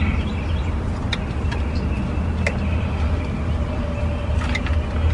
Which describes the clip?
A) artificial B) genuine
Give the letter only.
B